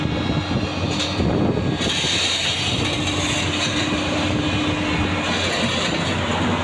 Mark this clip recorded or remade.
recorded